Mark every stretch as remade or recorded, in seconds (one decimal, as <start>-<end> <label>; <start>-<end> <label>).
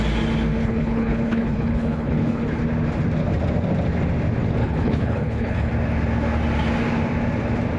0.0-0.6 recorded; 0.6-2.6 remade; 2.6-4.6 recorded; 4.6-5.7 remade; 5.7-7.8 recorded